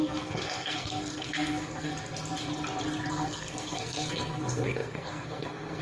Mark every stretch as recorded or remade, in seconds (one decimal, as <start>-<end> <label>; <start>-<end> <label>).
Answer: 0.0-1.9 remade; 1.9-3.1 recorded; 3.1-5.8 remade